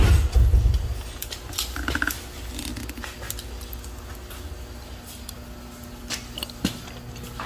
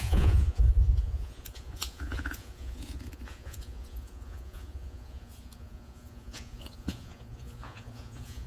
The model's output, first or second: second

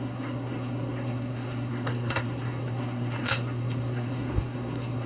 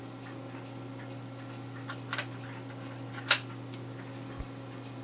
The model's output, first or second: first